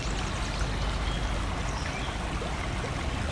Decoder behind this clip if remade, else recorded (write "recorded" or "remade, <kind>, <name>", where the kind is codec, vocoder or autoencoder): recorded